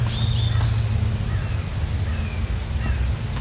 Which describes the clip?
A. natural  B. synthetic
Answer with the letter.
A